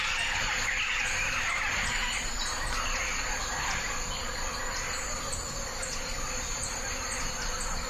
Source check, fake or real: real